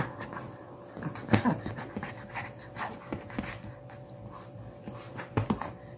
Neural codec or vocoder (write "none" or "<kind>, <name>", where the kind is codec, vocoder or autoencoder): none